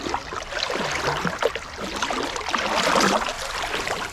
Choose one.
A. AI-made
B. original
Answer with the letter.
B